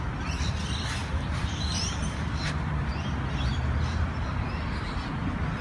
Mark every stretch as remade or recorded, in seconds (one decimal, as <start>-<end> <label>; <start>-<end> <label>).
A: 0.0-1.0 recorded; 1.0-3.0 remade; 3.0-4.3 recorded; 4.3-5.1 remade; 5.1-5.6 recorded